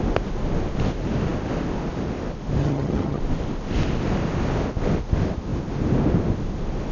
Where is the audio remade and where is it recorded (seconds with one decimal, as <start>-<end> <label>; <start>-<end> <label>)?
0.0-2.6 recorded; 2.6-3.2 remade; 3.2-6.9 recorded